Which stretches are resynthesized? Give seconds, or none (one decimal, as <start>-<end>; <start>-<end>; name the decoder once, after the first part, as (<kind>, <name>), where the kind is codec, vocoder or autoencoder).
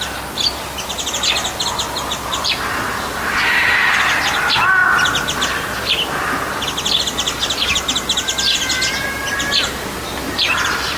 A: 2.4-4.2 (vocoder, BigVGAN v2); 10.2-11.0